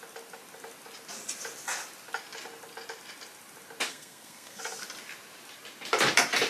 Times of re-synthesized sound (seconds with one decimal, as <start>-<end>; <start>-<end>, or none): 3.9-4.6